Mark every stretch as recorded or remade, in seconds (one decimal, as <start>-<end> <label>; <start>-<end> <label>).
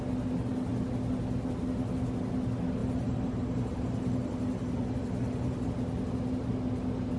0.0-2.8 recorded; 2.8-5.7 remade; 5.7-7.2 recorded